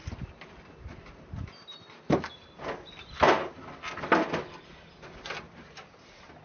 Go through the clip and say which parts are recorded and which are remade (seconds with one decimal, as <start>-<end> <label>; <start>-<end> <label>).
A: 0.0-6.4 recorded